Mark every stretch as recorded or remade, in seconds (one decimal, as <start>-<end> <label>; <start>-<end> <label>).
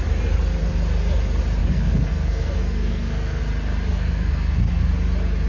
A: 0.0-1.6 recorded; 1.6-3.4 remade; 3.4-3.9 recorded; 3.9-4.8 remade; 4.8-5.5 recorded